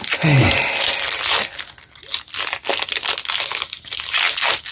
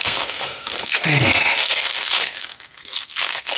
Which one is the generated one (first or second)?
second